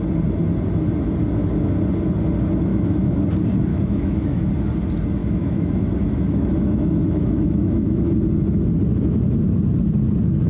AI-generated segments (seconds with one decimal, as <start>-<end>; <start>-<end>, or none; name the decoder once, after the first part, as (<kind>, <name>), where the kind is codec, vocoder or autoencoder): 2.7-3.2 (autoencoder, DAC-VAE); 3.7-4.5; 5.2-8.1

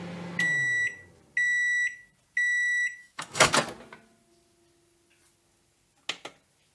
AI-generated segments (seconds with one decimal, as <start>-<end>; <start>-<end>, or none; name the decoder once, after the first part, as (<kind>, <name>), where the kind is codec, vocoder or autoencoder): 3.0-3.5 (autoencoder, DAC-VAE)

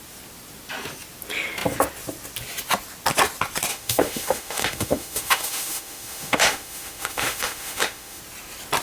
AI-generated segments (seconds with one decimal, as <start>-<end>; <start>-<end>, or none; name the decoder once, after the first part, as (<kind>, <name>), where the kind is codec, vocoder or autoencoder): 3.7-8.2 (autoencoder, DAC-VAE)

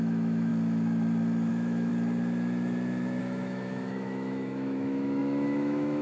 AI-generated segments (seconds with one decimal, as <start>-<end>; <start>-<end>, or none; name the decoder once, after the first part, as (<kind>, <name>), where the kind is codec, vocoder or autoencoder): 0.0-0.5 (autoencoder, DAC-VAE); 1.5-1.9; 3.2-6.0

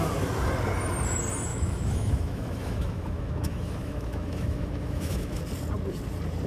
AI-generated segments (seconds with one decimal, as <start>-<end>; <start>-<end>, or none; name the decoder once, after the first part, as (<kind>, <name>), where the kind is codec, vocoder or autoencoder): 1.5-5.4 (autoencoder, DAC-VAE)

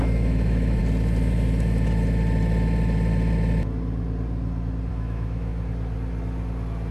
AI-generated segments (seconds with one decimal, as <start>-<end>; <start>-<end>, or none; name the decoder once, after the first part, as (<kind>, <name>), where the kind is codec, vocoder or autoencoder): 0.0-0.8 (autoencoder, DAC-VAE); 4.9-5.5

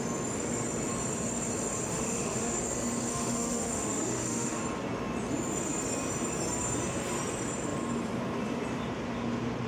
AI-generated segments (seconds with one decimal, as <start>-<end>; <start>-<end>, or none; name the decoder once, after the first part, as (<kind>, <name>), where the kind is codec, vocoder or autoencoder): 1.9-2.6 (autoencoder, DAC-VAE); 3.1-4.6